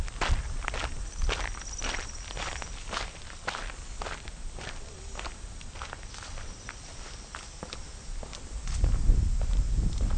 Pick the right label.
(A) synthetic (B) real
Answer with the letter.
B